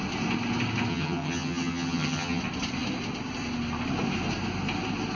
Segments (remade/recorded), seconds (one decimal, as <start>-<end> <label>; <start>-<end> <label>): 0.0-0.9 recorded; 0.9-2.4 remade; 2.4-5.1 recorded